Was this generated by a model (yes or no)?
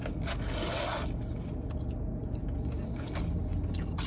no